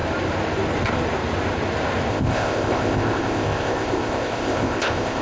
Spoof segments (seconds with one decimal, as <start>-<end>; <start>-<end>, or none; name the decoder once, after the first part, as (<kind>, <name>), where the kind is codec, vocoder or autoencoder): 2.1-5.2 (codec, ZipCodec)